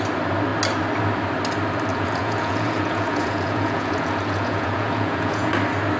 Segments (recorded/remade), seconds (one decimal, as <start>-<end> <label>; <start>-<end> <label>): 0.0-1.9 recorded; 1.9-5.5 remade; 5.5-6.0 recorded